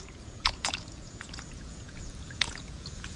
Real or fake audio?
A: fake